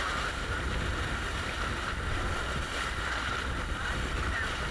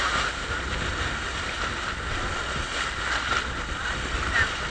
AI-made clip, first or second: first